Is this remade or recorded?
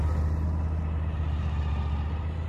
recorded